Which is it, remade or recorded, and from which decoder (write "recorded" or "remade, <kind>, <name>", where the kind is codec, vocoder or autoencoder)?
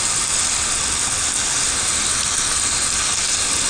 recorded